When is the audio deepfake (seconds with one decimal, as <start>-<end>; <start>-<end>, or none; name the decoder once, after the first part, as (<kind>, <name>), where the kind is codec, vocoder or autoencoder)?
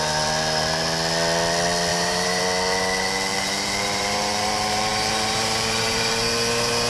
1.9-2.4 (vocoder, BigVGAN v2); 3.3-6.1